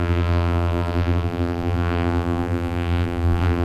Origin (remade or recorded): remade